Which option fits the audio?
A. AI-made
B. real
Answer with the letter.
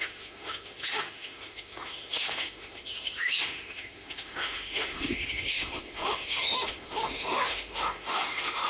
A